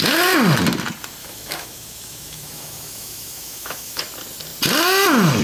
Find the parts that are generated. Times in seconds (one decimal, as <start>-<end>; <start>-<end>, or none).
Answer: 1.2-4.0